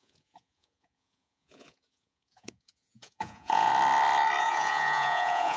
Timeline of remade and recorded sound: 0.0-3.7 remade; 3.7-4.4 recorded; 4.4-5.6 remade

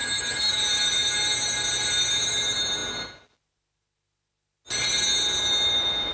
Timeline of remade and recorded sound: 0.0-0.6 remade; 0.6-6.1 recorded

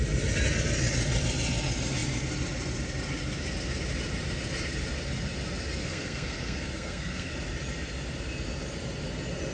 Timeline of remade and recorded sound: 0.0-5.8 recorded; 5.8-7.3 remade; 7.3-9.5 recorded

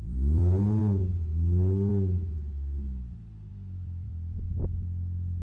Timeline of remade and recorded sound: 0.0-0.8 remade; 0.8-3.5 recorded; 3.5-4.6 remade; 4.6-5.4 recorded

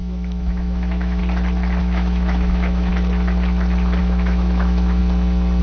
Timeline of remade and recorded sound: 0.0-1.2 remade; 1.2-1.8 recorded; 1.8-2.9 remade; 2.9-4.0 recorded; 4.0-5.0 remade; 5.0-5.6 recorded

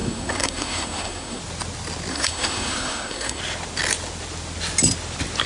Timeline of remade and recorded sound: 0.0-1.4 remade; 1.4-2.1 recorded; 2.1-3.4 remade; 3.4-5.5 recorded

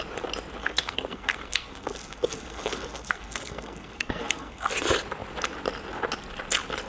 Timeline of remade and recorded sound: 0.0-0.6 recorded; 0.6-4.7 remade; 4.7-6.9 recorded

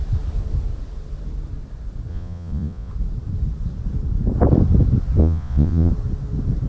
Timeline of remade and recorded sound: 0.0-2.1 recorded; 2.1-2.9 remade; 2.9-5.2 recorded; 5.2-5.9 remade; 5.9-6.7 recorded